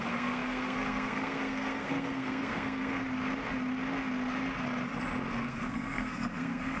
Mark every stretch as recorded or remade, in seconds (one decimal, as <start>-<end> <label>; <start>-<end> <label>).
0.0-3.0 remade; 3.0-5.3 recorded; 5.3-6.8 remade